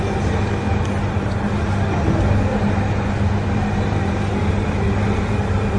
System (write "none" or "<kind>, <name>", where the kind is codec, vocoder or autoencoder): none